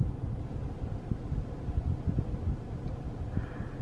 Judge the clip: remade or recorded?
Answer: recorded